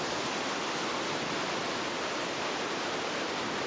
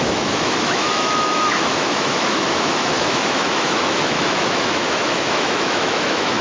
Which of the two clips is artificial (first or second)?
second